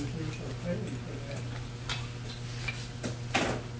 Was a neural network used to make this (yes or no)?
no